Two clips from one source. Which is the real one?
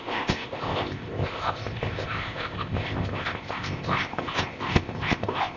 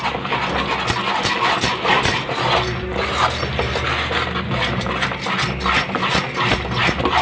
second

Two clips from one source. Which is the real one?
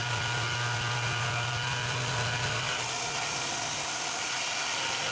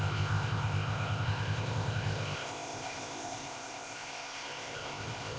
first